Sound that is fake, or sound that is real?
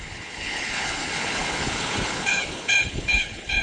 fake